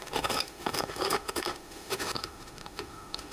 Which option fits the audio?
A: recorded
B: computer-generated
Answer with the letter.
B